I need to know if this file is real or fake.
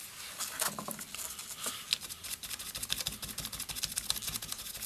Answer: real